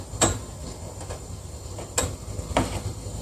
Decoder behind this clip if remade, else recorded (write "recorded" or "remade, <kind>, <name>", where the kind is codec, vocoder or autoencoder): recorded